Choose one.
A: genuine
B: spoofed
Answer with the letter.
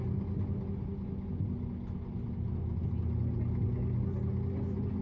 A